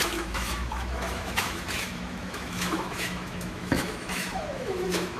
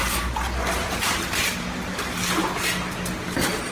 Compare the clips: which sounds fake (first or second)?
first